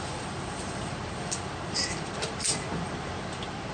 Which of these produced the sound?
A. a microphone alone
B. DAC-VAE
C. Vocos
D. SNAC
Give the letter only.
A